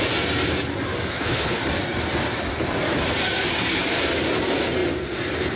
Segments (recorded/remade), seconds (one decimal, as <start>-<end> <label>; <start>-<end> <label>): 0.0-1.1 recorded; 1.1-1.6 remade; 1.6-5.6 recorded